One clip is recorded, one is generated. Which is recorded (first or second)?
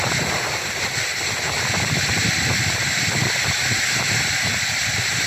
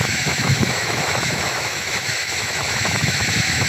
first